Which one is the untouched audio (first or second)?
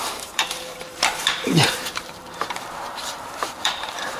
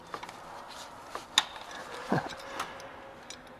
second